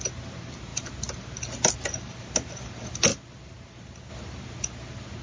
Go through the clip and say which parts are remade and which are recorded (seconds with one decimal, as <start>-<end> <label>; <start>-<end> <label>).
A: 0.0-5.2 recorded